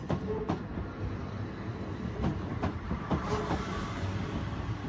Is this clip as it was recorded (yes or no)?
yes